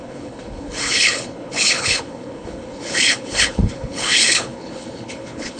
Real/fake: fake